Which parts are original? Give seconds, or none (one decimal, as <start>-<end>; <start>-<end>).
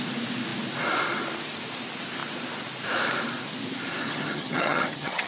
0.0-4.0